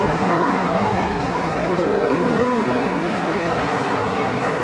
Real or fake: fake